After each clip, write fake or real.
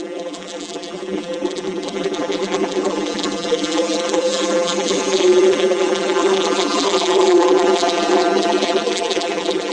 fake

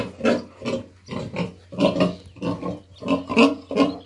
real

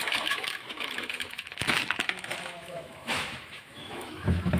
fake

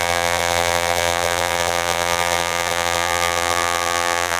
fake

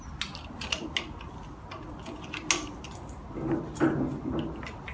real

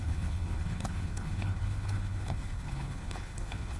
fake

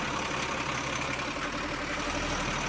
real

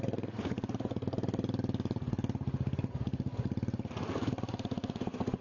real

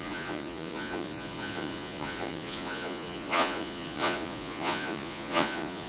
fake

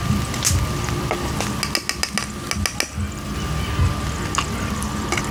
real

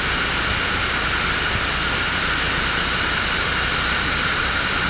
real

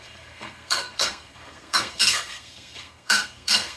fake